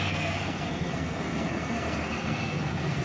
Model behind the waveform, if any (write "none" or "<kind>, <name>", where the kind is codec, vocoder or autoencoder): codec, SNAC